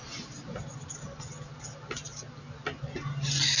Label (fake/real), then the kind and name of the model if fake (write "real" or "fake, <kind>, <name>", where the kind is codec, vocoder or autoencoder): real